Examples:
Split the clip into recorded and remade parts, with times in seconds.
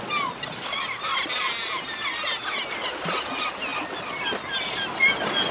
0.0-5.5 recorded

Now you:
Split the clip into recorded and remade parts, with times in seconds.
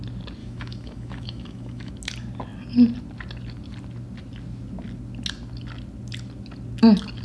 0.0-0.4 recorded; 0.4-1.9 remade; 1.9-7.2 recorded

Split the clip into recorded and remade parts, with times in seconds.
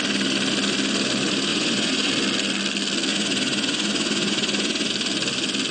0.0-1.5 recorded; 1.5-2.1 remade; 2.1-3.1 recorded; 3.1-4.9 remade; 4.9-5.7 recorded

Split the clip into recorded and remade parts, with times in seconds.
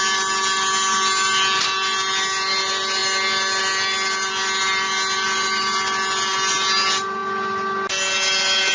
0.0-8.7 recorded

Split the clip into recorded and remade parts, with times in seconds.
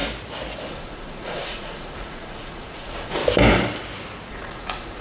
0.0-0.7 recorded; 0.7-3.2 remade; 3.2-4.3 recorded; 4.3-5.0 remade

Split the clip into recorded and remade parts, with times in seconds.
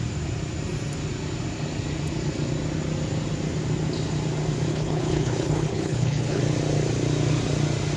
0.0-4.7 recorded; 4.7-6.4 remade; 6.4-8.0 recorded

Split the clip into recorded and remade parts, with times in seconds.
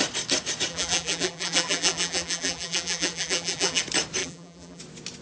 0.0-0.7 recorded; 0.7-3.8 remade; 3.8-4.2 recorded; 4.2-4.8 remade; 4.8-5.2 recorded